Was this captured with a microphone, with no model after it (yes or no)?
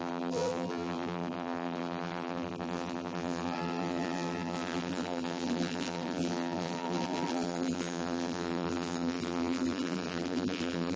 no